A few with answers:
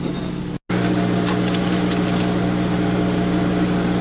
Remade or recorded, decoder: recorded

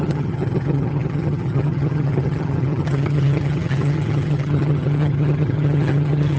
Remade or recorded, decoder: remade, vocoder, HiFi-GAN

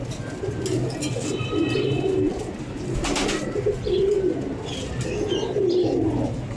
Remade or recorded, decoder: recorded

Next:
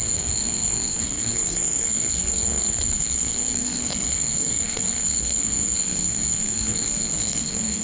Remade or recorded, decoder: remade, codec, SNAC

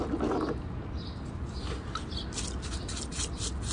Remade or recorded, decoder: recorded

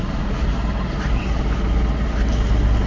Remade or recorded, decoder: recorded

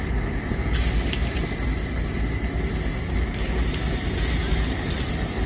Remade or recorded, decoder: recorded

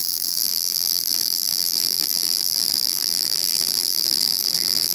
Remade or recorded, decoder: remade, vocoder, BigVGAN v2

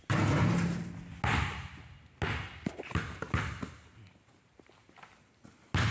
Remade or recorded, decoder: recorded